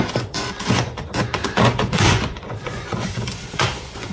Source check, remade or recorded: remade